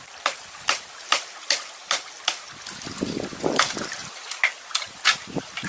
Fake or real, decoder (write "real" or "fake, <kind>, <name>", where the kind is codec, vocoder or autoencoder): real